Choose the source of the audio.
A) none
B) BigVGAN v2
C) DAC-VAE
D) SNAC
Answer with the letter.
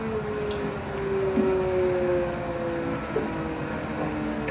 A